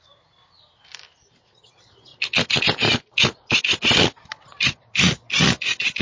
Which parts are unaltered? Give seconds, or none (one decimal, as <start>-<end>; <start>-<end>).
0.0-6.0